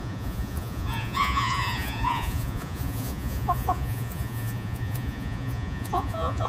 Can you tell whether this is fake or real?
fake